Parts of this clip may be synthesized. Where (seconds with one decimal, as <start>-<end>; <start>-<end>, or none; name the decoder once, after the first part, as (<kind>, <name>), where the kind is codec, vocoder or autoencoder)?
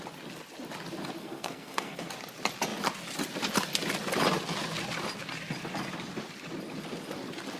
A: 1.2-2.1 (codec, SNAC)